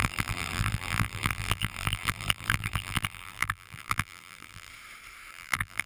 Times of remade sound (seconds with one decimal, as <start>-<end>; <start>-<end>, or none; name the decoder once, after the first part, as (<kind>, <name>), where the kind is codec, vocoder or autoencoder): 0.0-4.7 (vocoder, BigVGAN v2); 5.3-5.9